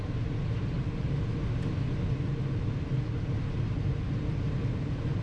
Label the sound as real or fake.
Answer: real